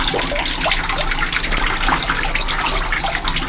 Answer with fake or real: real